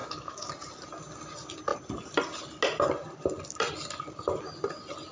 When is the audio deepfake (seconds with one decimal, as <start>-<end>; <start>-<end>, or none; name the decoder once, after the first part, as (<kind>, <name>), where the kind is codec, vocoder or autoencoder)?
0.0-0.5 (autoencoder, DAC-VAE)